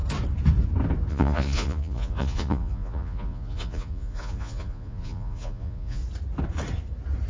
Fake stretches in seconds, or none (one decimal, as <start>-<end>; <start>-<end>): 1.1-6.0